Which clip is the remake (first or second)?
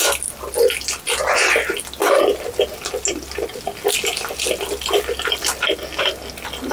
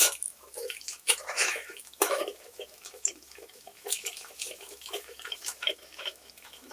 second